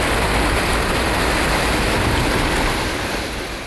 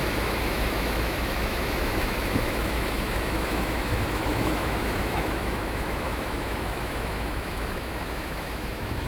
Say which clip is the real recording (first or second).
first